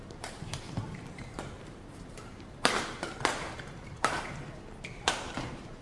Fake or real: fake